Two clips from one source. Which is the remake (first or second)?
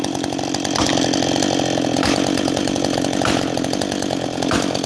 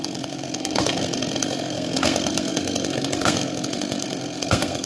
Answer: second